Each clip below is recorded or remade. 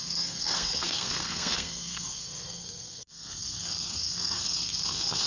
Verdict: remade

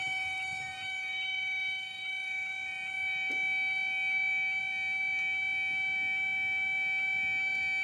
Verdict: recorded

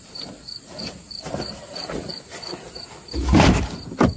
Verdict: recorded